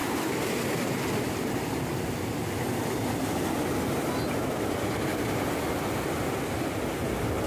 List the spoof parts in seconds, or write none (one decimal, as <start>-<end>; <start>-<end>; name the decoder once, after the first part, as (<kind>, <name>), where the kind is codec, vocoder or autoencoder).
none